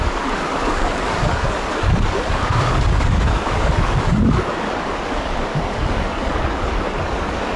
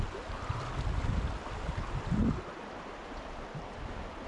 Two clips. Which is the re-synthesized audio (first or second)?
first